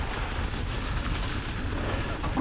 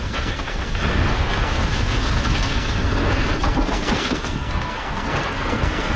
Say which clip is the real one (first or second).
first